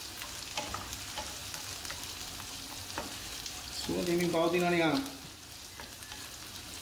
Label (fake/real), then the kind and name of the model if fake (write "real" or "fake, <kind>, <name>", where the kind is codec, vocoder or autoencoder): real